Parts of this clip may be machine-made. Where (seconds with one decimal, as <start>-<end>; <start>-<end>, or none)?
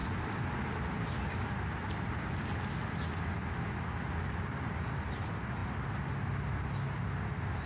none